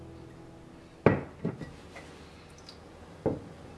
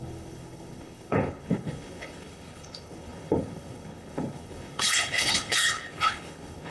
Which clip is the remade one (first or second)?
second